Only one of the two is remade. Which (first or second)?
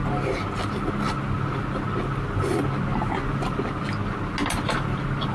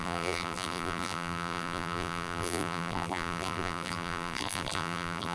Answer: second